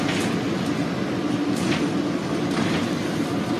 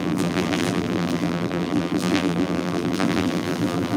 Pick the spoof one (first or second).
second